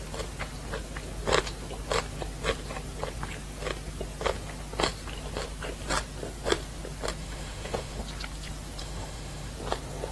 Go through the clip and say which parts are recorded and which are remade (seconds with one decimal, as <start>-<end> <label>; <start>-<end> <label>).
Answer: 0.0-7.2 recorded; 7.2-8.0 remade; 8.0-8.8 recorded; 8.8-9.5 remade; 9.5-10.1 recorded